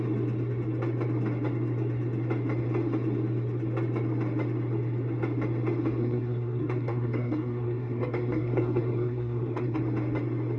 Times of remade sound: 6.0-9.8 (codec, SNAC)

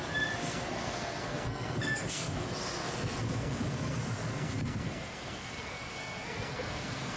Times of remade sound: 0.4-2.4 (codec, SNAC); 2.8-7.2

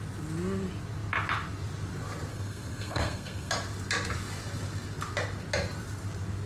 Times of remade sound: 2.3-3.5 (codec, SNAC)